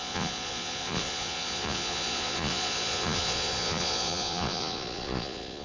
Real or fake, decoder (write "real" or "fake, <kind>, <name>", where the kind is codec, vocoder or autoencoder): fake, vocoder, Vocos